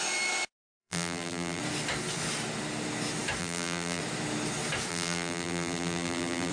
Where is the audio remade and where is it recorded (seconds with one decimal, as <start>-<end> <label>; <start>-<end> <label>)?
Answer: 0.0-0.8 recorded; 0.8-1.6 remade; 1.6-3.4 recorded; 3.4-4.0 remade; 4.0-4.9 recorded; 4.9-6.5 remade